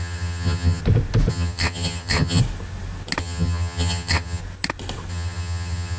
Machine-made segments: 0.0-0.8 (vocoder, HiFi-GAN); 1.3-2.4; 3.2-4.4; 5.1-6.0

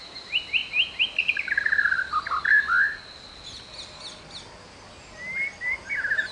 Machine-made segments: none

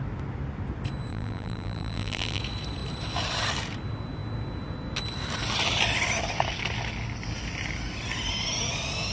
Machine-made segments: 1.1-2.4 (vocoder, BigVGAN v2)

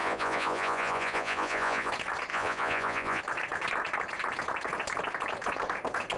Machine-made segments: 0.0-1.9 (vocoder, Vocos); 2.3-3.2